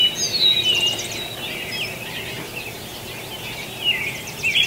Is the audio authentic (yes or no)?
yes